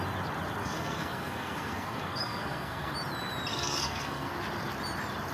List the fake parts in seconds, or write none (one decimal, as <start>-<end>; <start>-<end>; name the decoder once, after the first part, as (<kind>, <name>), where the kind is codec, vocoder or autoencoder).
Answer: 0.6-2.9 (codec, SNAC); 3.5-4.3